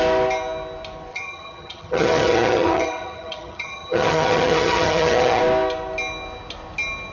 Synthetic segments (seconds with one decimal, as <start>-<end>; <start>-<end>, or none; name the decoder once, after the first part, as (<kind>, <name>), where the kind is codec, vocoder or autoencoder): 1.1-5.4 (vocoder, HiFi-GAN)